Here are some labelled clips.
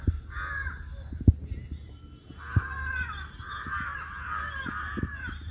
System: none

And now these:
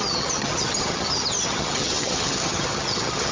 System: vocoder, HiFi-GAN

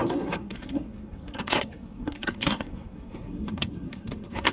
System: codec, SNAC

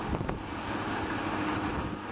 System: none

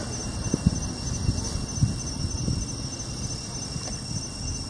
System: none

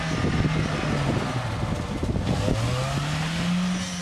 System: none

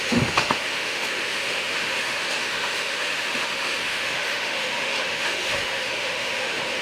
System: autoencoder, DAC-VAE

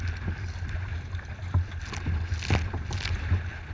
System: none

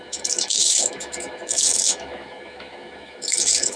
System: autoencoder, DAC-VAE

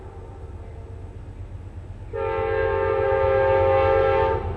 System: none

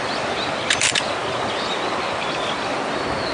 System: none